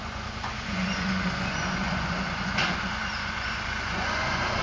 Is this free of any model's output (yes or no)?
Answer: no